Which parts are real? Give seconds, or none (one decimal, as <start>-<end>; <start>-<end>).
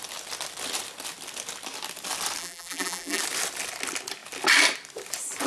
0.0-2.4; 3.2-5.5